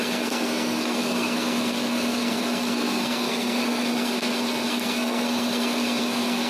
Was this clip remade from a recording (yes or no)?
yes